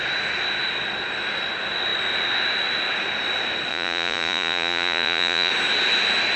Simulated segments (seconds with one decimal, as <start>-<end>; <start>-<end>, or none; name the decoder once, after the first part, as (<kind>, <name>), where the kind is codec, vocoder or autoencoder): 3.7-5.5 (vocoder, Vocos)